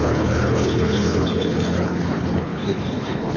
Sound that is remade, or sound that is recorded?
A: remade